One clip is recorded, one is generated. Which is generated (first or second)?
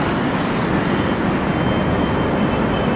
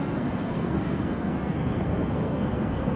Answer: second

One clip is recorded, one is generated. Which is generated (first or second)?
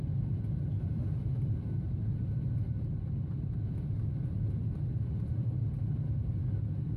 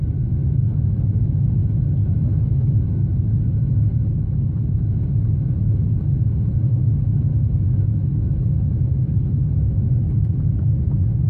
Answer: first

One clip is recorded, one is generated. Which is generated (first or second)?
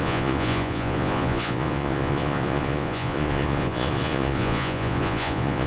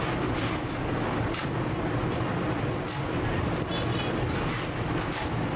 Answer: first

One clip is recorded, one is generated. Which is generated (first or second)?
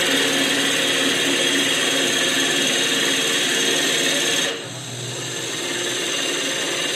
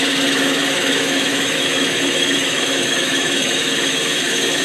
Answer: second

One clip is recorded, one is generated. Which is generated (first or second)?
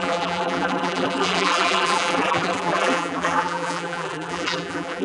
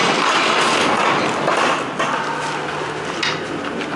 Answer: first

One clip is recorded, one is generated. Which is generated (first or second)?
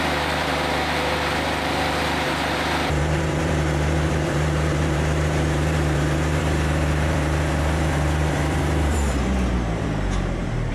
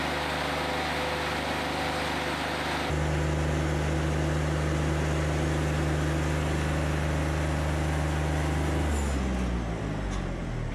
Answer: first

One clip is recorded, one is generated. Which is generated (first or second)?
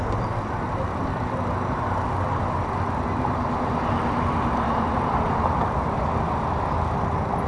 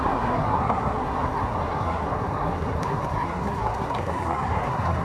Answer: second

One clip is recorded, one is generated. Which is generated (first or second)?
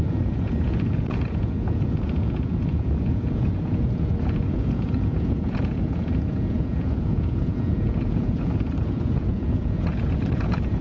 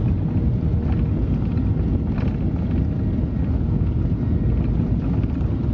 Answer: first